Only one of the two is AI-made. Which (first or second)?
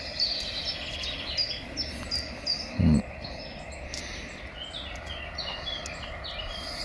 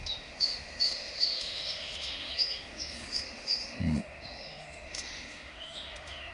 second